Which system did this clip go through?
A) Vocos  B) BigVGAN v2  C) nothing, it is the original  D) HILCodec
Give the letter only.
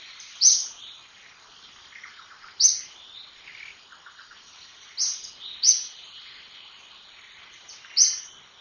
C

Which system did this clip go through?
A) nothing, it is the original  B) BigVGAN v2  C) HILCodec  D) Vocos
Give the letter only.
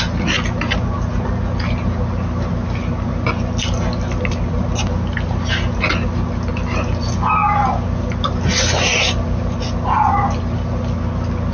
A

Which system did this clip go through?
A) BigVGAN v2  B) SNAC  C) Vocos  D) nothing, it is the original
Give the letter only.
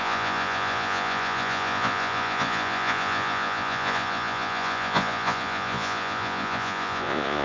C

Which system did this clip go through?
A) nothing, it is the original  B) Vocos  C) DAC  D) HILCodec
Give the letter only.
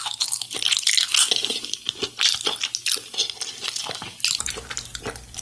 A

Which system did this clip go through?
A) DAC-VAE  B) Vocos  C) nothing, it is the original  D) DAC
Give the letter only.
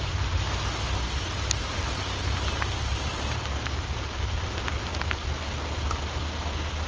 C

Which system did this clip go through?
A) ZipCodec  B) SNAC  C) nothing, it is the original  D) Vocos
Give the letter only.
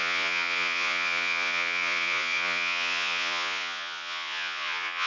D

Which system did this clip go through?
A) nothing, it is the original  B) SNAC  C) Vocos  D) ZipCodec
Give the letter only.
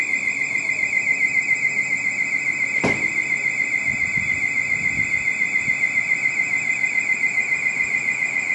A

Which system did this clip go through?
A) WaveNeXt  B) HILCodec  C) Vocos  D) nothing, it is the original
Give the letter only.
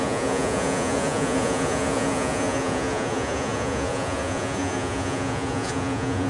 C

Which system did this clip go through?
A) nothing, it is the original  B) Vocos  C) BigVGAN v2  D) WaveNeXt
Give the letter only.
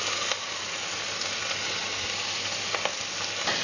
A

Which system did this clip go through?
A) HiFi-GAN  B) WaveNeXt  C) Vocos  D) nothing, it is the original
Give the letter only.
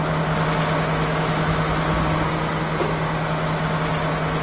D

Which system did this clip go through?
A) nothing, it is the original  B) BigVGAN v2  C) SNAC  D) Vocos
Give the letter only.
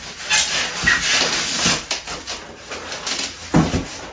A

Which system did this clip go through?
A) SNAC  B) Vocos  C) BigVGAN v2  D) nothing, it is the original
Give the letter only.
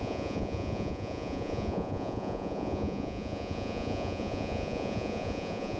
B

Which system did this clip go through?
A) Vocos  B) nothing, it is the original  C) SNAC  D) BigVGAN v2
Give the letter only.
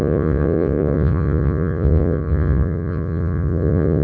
A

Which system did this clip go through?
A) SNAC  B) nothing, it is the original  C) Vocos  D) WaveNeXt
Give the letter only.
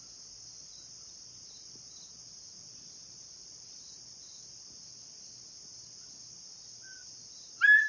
B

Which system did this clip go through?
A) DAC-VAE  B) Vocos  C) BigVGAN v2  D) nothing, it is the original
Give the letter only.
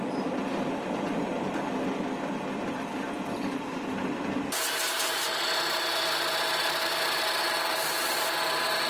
D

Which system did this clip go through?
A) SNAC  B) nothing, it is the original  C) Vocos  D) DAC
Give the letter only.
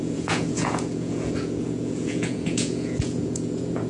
C